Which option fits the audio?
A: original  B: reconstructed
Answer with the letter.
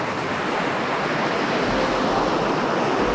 A